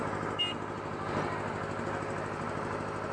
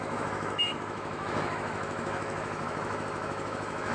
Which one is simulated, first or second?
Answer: second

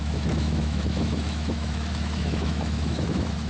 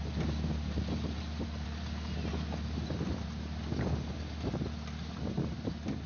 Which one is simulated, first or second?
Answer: first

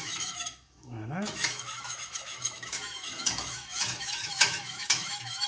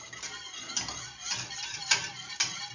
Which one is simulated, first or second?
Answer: first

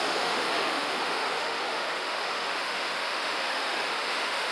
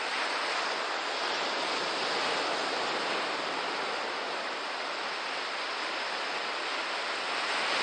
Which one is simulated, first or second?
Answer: first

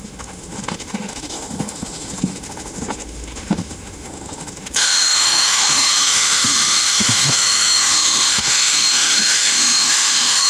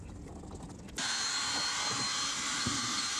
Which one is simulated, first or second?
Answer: first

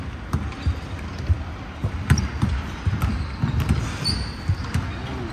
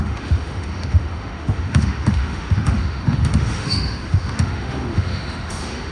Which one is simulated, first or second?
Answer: second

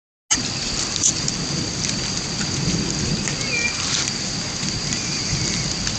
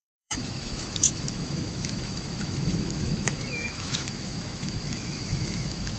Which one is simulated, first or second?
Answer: second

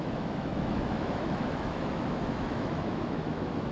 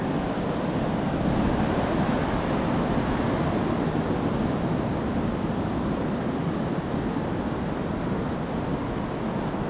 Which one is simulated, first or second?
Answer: first